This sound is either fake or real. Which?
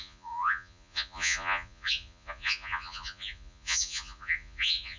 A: fake